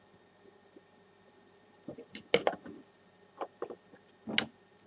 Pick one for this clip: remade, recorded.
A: recorded